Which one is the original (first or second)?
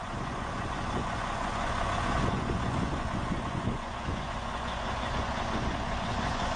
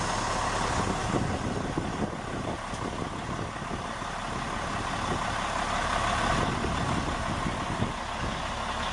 second